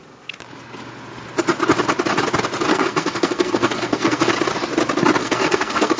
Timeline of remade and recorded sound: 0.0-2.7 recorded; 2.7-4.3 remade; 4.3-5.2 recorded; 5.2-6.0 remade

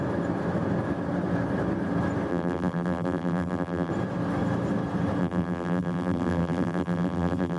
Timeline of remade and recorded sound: 0.0-2.3 recorded; 2.3-3.9 remade; 3.9-5.2 recorded; 5.2-7.6 remade

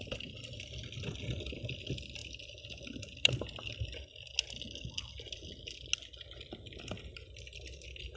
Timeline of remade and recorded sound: 0.0-8.2 recorded

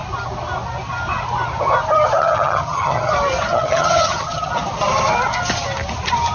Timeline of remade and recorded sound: 0.0-2.2 recorded; 2.2-3.1 remade; 3.1-3.5 recorded; 3.5-4.5 remade; 4.5-6.3 recorded

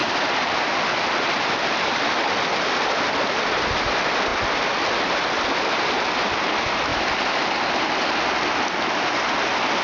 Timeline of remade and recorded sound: 0.0-9.8 recorded

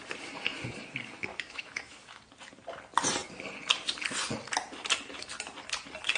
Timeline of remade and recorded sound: 0.0-1.3 recorded; 1.3-2.2 remade; 2.2-6.2 recorded

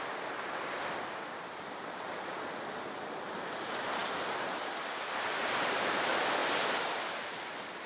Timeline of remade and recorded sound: 0.0-4.0 remade; 4.0-5.4 recorded; 5.4-6.4 remade; 6.4-7.9 recorded

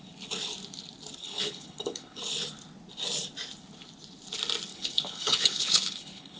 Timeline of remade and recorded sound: 0.0-1.2 recorded; 1.2-2.2 remade; 2.2-4.7 recorded; 4.7-6.4 remade